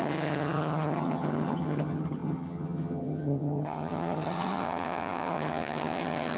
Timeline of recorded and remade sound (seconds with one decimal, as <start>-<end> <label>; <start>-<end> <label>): 0.0-6.4 remade